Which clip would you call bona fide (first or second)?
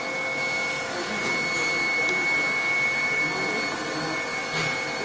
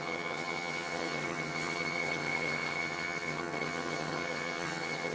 first